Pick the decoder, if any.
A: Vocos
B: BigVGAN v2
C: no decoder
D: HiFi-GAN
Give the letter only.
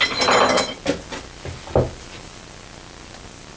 C